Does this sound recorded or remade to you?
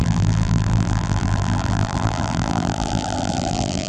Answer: remade